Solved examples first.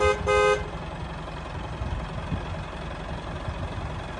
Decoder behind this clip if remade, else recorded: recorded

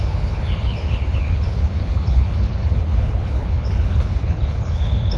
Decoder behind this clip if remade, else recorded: remade, codec, HILCodec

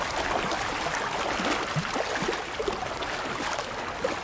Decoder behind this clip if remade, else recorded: recorded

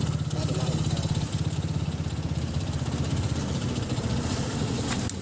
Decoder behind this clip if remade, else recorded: recorded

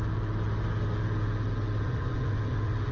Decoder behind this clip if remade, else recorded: recorded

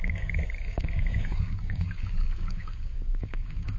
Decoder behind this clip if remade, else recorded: remade, codec, DAC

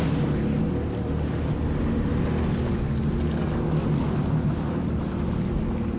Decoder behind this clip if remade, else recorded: recorded